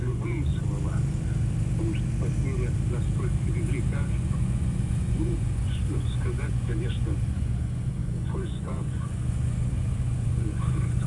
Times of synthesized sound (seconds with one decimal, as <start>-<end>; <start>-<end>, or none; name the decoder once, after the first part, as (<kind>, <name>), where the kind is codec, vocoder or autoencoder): 0.0-0.5 (vocoder, Vocos); 3.9-11.1